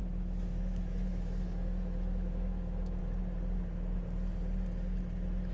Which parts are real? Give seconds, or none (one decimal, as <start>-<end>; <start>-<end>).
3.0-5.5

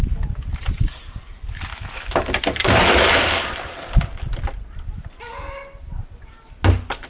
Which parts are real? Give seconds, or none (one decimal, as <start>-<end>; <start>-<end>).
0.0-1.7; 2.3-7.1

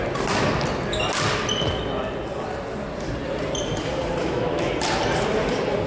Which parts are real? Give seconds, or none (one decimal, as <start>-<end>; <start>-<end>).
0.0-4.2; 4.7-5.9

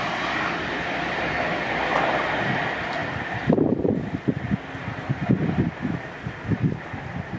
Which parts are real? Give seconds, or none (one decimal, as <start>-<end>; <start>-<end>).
0.0-7.4